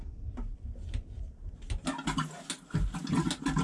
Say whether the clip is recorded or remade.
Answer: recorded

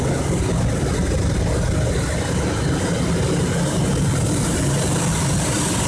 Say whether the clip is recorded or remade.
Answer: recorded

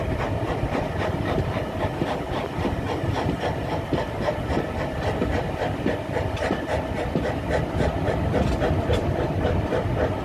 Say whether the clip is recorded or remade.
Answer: recorded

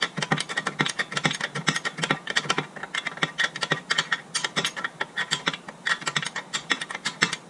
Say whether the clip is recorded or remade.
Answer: recorded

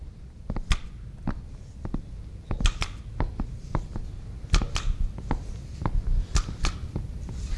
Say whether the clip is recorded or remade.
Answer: recorded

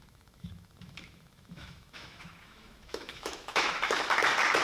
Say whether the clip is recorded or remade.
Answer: remade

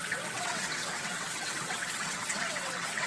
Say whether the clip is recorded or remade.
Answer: remade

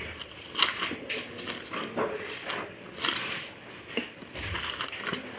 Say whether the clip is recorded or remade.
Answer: recorded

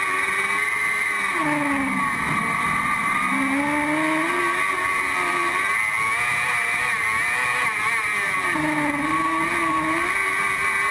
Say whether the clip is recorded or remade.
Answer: recorded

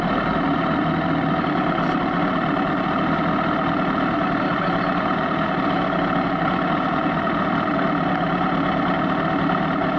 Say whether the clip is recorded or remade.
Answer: recorded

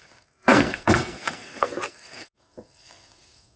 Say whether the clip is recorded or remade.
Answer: remade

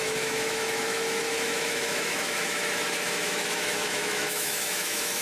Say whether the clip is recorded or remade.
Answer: remade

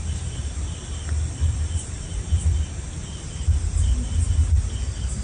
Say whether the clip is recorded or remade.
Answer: recorded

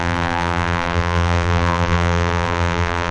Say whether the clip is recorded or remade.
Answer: remade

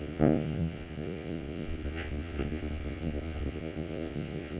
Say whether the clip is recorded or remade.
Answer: remade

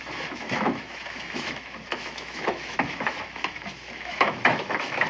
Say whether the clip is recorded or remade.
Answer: remade